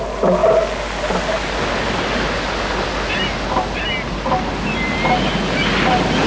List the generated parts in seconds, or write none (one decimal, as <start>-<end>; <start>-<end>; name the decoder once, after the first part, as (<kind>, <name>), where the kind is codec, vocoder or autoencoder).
none

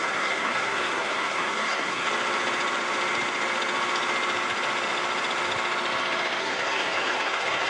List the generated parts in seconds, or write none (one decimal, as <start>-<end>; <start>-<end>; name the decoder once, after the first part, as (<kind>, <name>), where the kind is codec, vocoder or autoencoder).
0.0-2.1 (codec, SNAC); 6.4-7.7